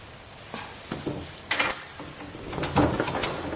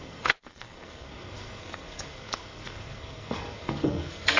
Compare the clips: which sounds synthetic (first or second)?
second